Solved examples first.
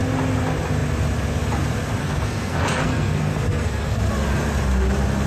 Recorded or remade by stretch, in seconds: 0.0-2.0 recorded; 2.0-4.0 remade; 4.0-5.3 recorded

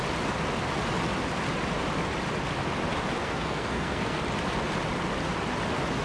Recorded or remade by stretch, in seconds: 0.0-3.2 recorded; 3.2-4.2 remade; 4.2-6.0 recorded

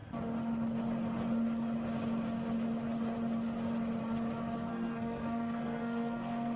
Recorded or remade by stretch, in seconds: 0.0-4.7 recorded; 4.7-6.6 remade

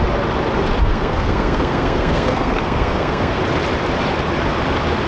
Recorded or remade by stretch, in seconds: 0.0-0.8 recorded; 0.8-3.4 remade; 3.4-5.1 recorded

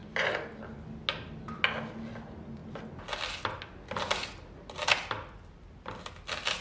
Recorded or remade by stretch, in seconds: 0.0-6.6 recorded

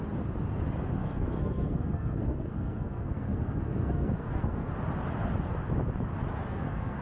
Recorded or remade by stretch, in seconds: 0.0-1.0 recorded; 1.0-4.7 remade; 4.7-6.5 recorded; 6.5-7.0 remade

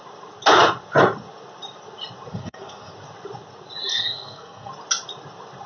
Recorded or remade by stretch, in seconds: 0.0-2.3 recorded; 2.3-2.9 remade; 2.9-3.9 recorded; 3.9-4.7 remade; 4.7-5.7 recorded

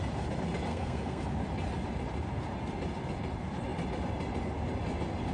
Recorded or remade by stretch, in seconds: 0.0-0.7 recorded; 0.7-1.2 remade; 1.2-5.3 recorded